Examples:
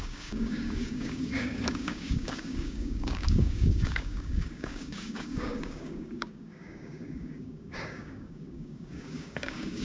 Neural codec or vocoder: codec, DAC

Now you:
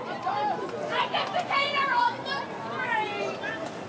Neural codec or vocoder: none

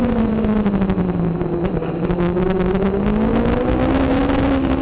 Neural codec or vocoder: none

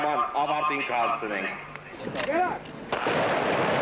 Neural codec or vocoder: none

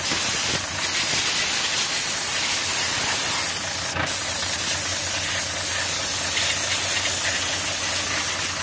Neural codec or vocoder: none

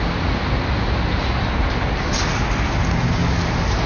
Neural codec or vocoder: none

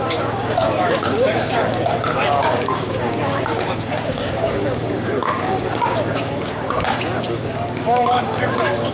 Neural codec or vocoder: codec, DAC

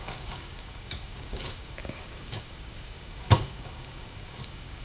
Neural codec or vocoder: codec, DAC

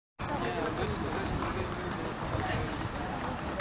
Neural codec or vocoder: none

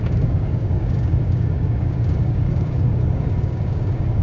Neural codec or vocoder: codec, DAC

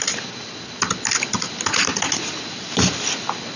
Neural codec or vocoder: none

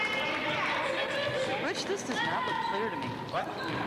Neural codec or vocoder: none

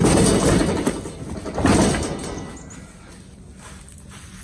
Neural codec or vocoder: none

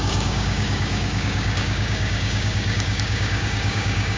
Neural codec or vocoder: codec, DAC